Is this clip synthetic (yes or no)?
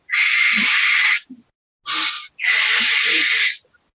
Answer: no